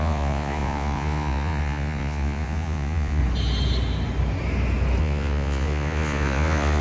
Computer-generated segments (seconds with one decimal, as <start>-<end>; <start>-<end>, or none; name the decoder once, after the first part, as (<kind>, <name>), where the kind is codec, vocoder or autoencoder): 0.0-3.2 (vocoder, Vocos); 5.0-6.8